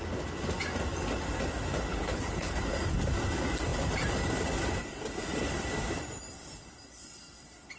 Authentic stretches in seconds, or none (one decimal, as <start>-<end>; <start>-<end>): 0.0-1.9; 2.6-7.8